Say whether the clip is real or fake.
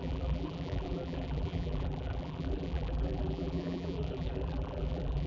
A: fake